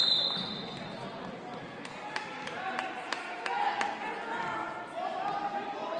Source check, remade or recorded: recorded